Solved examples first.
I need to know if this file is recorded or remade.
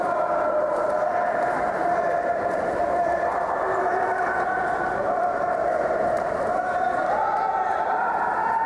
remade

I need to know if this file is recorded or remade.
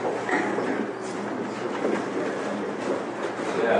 recorded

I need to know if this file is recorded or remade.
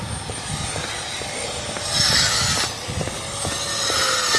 recorded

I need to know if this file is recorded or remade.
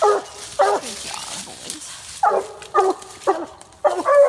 recorded